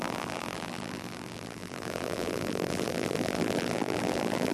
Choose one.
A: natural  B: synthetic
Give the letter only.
B